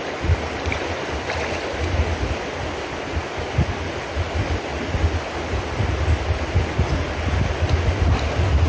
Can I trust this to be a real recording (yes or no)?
yes